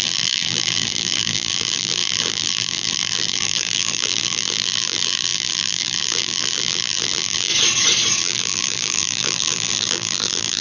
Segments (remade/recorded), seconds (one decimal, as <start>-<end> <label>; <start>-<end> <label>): 0.0-7.5 remade; 7.5-8.2 recorded; 8.2-10.6 remade